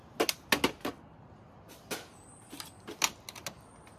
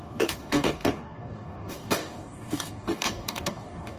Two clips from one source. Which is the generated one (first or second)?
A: second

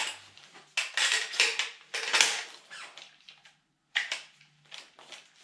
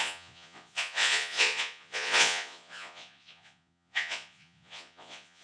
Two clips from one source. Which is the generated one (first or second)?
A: second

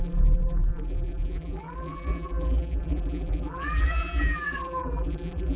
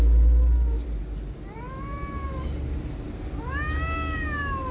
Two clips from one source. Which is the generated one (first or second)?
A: first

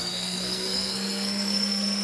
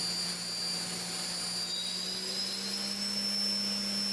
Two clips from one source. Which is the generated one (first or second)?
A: first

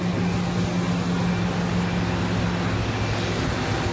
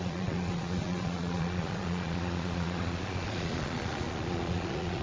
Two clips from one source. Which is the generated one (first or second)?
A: second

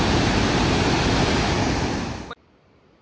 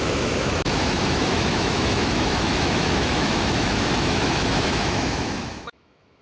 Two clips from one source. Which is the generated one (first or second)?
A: second